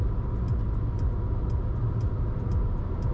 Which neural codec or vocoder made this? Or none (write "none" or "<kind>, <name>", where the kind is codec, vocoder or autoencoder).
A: none